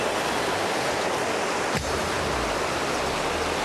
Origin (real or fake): real